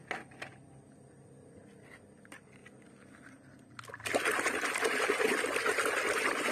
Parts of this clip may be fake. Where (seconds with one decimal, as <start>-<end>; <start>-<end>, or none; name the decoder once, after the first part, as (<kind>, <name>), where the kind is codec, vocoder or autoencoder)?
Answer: none